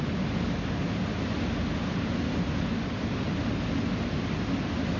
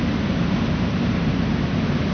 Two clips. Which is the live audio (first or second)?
first